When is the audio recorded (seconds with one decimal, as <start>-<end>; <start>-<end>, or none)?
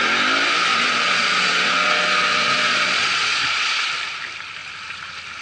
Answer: 0.0-0.7; 3.9-5.4